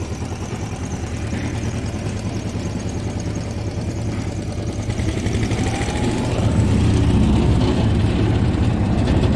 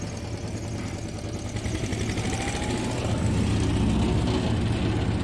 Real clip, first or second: second